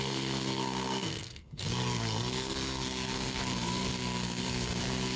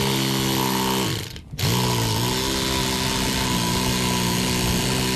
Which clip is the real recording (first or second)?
second